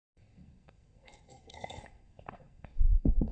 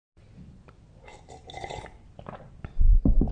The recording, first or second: second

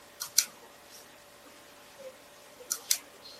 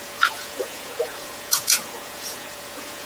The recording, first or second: first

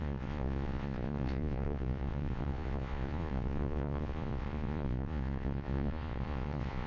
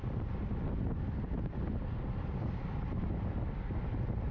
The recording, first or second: second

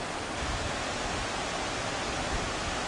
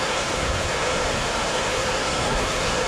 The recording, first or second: first